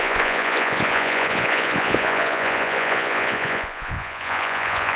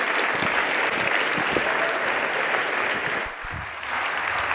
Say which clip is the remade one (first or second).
first